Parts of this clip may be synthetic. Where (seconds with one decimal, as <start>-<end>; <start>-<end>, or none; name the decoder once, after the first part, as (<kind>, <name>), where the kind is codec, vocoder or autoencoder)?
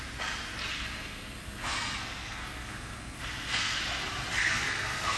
0.7-3.8 (codec, SNAC); 4.4-5.2